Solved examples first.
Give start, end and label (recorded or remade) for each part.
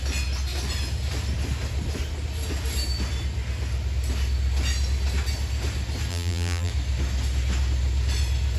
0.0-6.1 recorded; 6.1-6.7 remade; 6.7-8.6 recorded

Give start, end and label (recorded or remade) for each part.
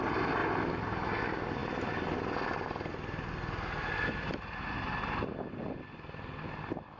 0.0-7.0 recorded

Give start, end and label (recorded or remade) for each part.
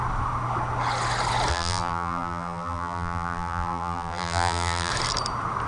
0.0-1.5 recorded; 1.5-4.9 remade; 4.9-5.7 recorded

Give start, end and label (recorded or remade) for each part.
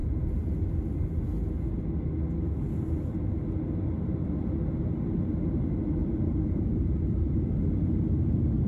0.0-6.0 recorded; 6.0-7.5 remade; 7.5-8.7 recorded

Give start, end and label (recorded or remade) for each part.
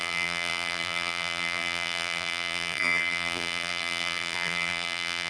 0.0-5.3 remade